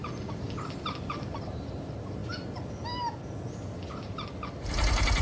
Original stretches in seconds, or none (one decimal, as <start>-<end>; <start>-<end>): 0.0-5.2